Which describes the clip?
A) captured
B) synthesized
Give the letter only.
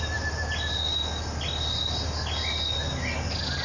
A